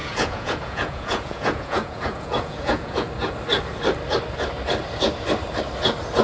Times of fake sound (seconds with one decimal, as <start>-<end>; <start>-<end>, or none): 0.0-3.1